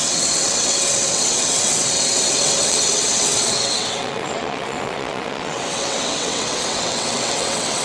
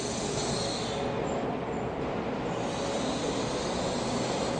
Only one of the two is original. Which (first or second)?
second